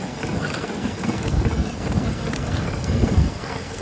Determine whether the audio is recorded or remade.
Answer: remade